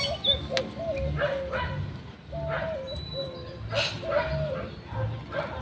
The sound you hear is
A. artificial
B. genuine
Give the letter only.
B